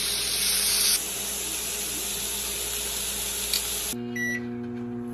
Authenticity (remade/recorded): recorded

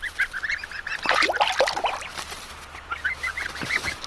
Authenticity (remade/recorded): recorded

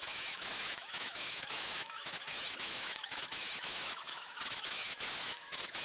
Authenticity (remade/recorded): remade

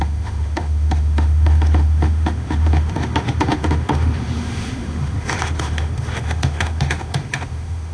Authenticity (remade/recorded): remade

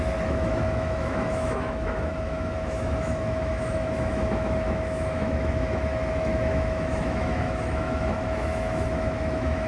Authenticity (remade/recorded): remade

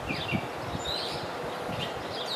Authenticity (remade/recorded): recorded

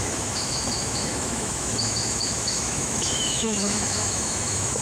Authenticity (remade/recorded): remade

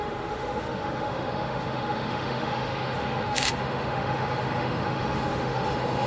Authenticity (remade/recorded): remade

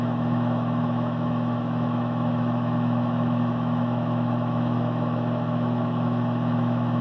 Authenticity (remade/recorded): remade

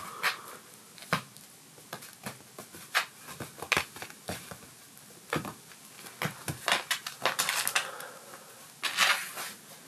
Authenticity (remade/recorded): recorded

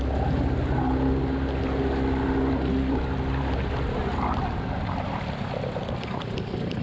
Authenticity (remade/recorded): recorded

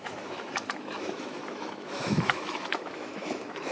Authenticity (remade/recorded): remade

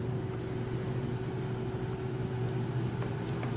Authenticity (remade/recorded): recorded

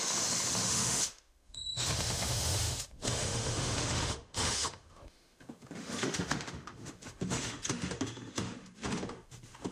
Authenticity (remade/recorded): remade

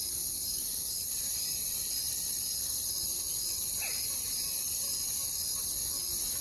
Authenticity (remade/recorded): recorded